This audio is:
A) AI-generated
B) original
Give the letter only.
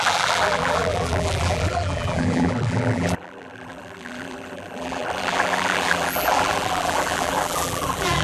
A